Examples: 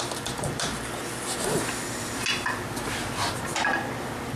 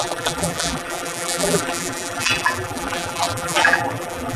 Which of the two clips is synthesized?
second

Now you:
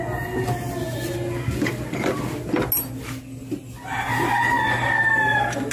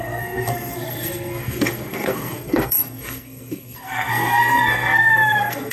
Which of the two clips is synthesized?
second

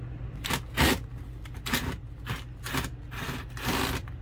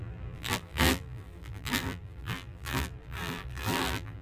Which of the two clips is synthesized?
second